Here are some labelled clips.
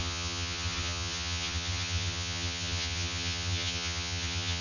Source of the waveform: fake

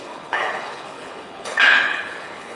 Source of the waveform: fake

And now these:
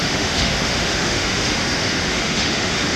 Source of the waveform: fake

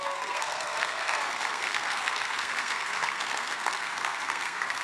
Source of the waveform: fake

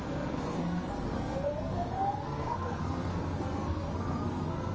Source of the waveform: fake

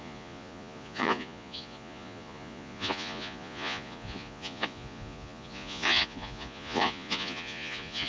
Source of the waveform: fake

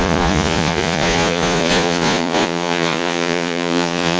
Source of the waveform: fake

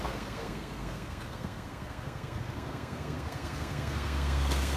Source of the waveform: fake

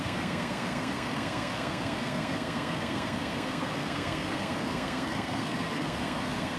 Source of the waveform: fake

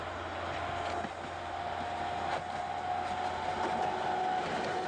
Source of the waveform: real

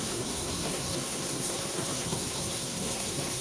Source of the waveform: fake